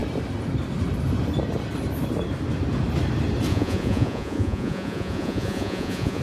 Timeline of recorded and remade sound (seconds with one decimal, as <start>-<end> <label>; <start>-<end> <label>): 0.0-3.5 recorded; 3.5-6.2 remade